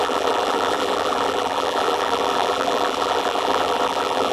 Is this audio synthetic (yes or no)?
yes